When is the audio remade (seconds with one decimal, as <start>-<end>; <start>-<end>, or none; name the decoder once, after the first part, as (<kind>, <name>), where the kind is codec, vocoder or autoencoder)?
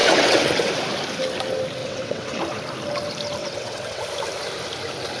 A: 0.0-0.7 (vocoder, WaveNeXt); 1.8-2.4; 3.4-4.0